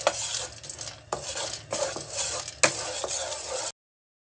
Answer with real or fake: real